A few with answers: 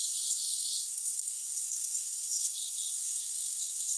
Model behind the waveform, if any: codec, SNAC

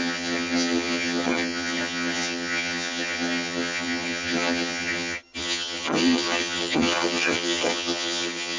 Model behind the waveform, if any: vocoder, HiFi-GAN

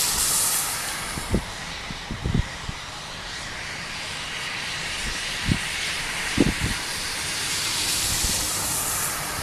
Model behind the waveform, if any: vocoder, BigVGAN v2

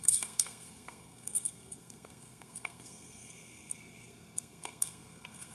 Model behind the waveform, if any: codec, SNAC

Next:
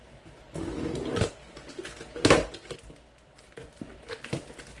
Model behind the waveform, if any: none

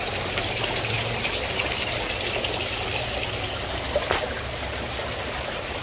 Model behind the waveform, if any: none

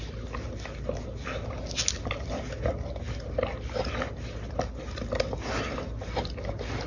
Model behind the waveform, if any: none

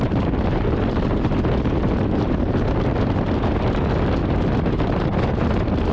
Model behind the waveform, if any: none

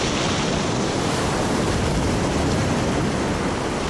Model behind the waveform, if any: none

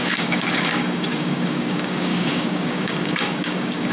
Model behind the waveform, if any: codec, DAC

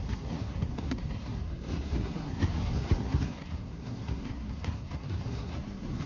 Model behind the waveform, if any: codec, SNAC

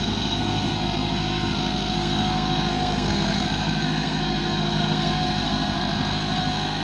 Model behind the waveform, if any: codec, SNAC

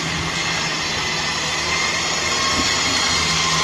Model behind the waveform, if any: none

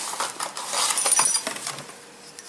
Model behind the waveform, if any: none